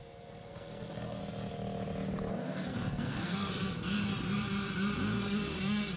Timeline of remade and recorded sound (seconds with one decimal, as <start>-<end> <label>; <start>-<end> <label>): 0.0-1.2 remade; 1.2-2.3 recorded; 2.3-4.1 remade; 4.1-6.0 recorded

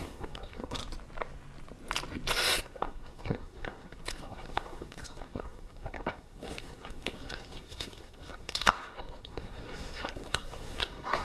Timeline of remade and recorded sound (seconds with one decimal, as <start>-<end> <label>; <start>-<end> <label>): 0.0-0.8 remade; 0.8-2.6 recorded; 2.6-11.2 remade

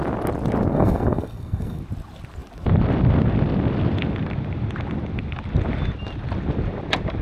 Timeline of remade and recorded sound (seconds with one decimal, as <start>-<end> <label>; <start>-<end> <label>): 0.0-0.7 recorded; 0.7-1.8 remade; 1.8-7.2 recorded

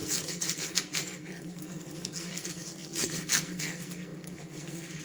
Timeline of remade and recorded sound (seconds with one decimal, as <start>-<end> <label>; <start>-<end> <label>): 0.0-5.0 remade

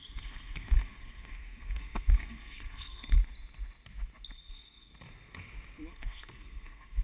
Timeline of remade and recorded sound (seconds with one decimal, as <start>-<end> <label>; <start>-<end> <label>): 0.0-3.2 remade; 3.2-4.5 recorded; 4.5-4.9 remade; 4.9-5.9 recorded; 5.9-7.0 remade

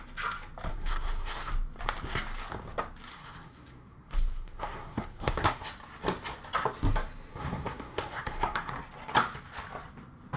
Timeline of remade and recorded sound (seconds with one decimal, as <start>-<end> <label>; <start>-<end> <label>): 0.0-0.7 recorded; 0.7-1.5 remade; 1.5-3.1 recorded; 3.1-5.7 remade; 5.7-7.3 recorded; 7.3-8.7 remade; 8.7-10.4 recorded

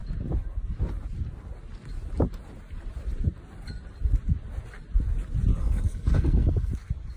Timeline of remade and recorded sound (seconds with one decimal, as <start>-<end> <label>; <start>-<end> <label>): 0.0-5.5 recorded; 5.5-6.7 remade; 6.7-7.2 recorded

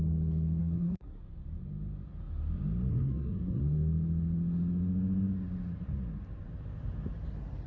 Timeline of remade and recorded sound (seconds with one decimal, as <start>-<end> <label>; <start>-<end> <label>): 0.0-0.6 recorded; 0.6-1.2 remade; 1.2-2.9 recorded; 2.9-3.6 remade; 3.6-7.7 recorded